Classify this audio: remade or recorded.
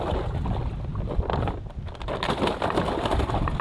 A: recorded